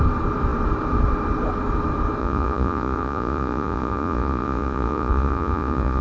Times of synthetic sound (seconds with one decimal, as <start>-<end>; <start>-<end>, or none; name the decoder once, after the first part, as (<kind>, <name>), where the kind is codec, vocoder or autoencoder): 2.2-6.0 (vocoder, Vocos)